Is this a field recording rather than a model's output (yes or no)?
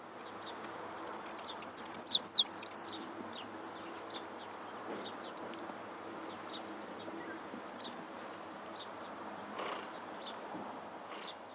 no